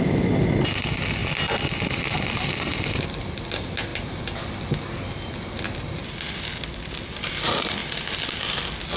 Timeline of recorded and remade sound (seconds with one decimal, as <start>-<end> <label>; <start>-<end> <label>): 0.0-9.0 recorded